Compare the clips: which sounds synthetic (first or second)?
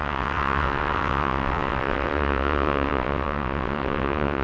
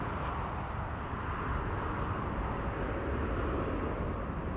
first